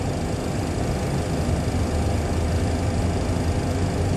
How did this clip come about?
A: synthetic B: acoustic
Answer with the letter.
B